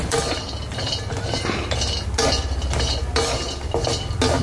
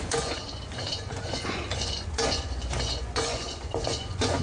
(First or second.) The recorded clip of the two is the first